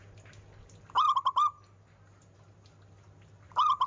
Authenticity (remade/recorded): recorded